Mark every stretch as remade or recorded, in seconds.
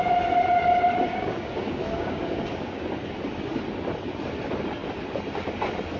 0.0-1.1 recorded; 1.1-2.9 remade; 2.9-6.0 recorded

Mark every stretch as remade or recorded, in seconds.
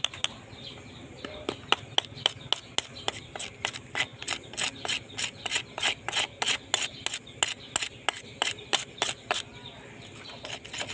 0.0-10.9 recorded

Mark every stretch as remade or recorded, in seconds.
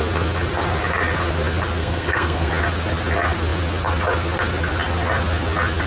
0.0-1.8 recorded; 1.8-2.5 remade; 2.5-5.9 recorded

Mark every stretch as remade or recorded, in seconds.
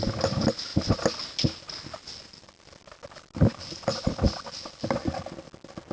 0.0-5.9 recorded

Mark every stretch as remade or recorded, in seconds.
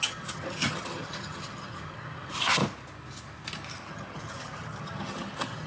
0.0-2.6 remade; 2.6-3.9 recorded; 3.9-5.7 remade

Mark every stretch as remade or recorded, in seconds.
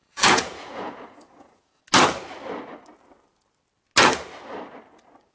0.0-1.8 remade; 1.8-5.3 recorded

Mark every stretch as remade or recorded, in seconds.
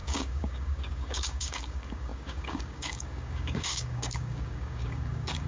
0.0-5.5 remade